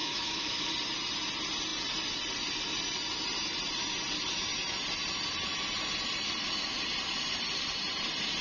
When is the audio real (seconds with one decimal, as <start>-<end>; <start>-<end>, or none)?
0.7-8.4